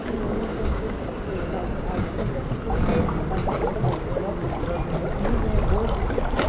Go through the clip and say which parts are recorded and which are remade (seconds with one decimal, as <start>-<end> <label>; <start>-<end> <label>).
0.0-2.5 remade; 2.5-6.5 recorded